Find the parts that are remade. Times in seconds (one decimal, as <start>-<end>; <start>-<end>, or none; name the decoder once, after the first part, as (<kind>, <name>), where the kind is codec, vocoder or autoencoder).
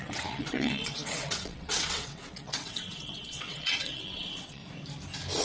0.0-4.6 (vocoder, WaveNeXt)